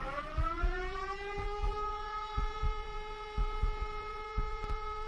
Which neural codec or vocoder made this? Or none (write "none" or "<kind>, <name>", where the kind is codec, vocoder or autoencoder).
vocoder, BigVGAN v2